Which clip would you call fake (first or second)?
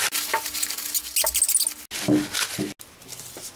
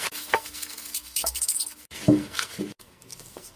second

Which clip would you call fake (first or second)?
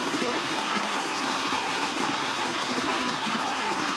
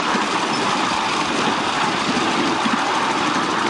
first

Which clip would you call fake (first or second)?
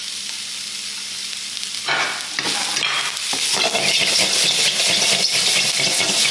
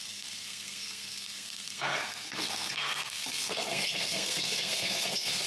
second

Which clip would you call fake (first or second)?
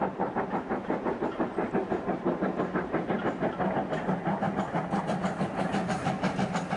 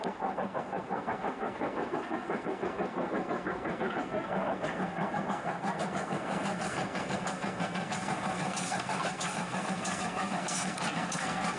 second